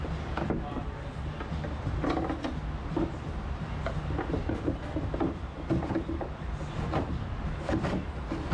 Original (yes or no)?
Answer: yes